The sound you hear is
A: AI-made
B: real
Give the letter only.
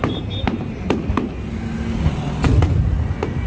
B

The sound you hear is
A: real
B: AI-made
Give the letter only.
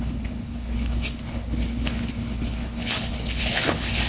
B